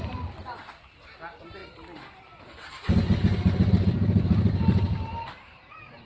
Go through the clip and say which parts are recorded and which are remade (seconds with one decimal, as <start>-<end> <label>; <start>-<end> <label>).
0.0-6.1 recorded

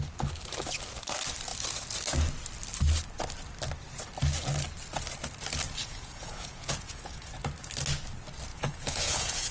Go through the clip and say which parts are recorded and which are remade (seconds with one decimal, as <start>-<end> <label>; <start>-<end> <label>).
0.0-5.8 recorded; 5.8-7.3 remade; 7.3-8.5 recorded; 8.5-9.5 remade

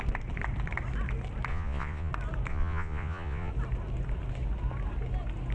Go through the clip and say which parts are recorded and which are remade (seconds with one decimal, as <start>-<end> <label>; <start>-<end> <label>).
0.0-1.5 recorded; 1.5-2.1 remade; 2.1-2.5 recorded; 2.5-3.5 remade; 3.5-5.5 recorded

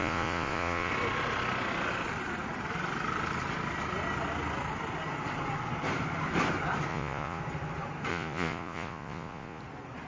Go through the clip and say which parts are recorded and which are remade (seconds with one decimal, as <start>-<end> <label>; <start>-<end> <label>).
0.0-0.9 remade; 0.9-6.9 recorded; 6.9-7.4 remade; 7.4-8.1 recorded; 8.1-9.6 remade; 9.6-10.1 recorded

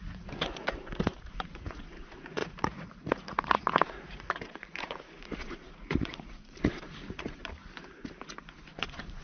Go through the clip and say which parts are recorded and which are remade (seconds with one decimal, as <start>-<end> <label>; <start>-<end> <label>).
0.0-7.4 remade; 7.4-8.5 recorded; 8.5-9.2 remade